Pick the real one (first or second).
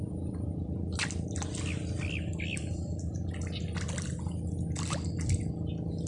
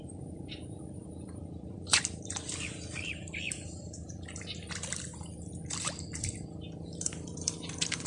first